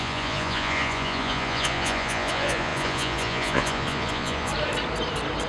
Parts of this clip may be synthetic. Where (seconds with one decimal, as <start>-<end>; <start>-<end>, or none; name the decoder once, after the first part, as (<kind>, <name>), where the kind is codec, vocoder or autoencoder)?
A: 0.0-4.5 (vocoder, Vocos)